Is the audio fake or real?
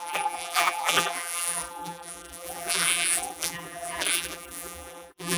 fake